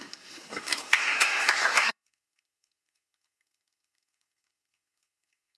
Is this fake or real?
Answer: fake